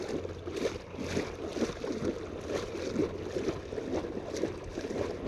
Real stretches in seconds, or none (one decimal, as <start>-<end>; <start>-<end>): 0.0-5.3